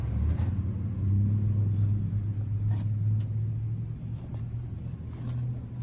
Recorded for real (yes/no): yes